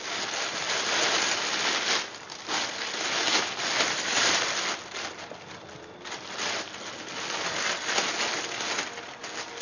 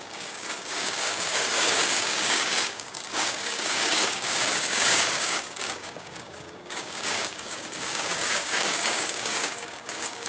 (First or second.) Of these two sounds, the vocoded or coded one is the second